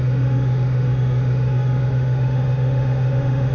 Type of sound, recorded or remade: remade